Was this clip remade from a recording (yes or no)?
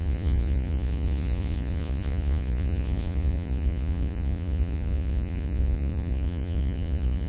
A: yes